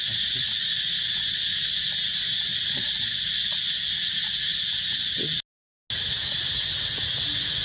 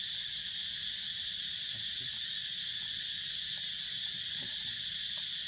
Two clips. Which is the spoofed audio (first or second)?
second